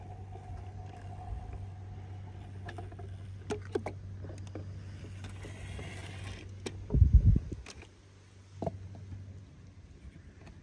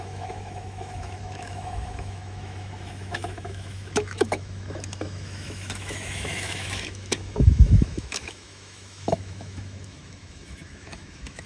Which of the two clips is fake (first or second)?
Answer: second